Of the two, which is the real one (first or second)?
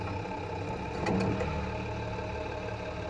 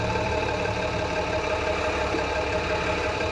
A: first